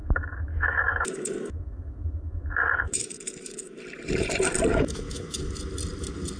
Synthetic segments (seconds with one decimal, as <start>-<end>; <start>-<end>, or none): 0.0-3.8; 4.7-5.5